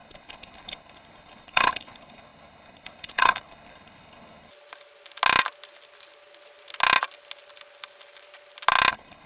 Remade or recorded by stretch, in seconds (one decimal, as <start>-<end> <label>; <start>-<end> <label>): 0.0-4.5 remade; 4.5-8.9 recorded; 8.9-9.3 remade